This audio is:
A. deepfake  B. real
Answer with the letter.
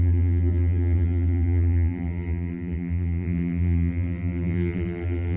A